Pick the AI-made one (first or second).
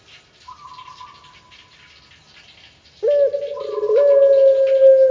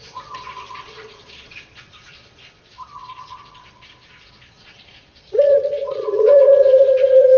second